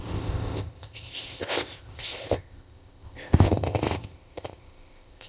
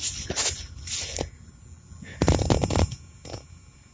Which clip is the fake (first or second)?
first